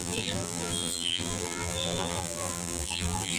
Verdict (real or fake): fake